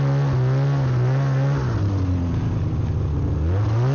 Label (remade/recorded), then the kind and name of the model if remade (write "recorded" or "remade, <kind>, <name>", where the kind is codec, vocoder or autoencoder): recorded